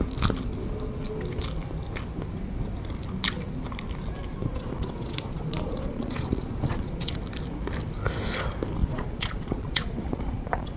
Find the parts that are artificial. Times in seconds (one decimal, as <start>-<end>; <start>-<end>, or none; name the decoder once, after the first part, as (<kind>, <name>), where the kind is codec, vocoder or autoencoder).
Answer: 4.5-7.2 (vocoder, Vocos); 8.8-10.8